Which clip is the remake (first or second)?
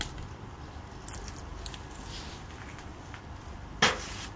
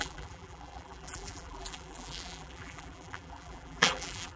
second